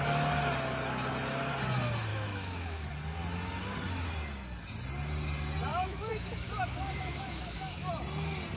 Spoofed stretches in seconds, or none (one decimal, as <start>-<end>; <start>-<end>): 2.1-2.9; 5.7-7.9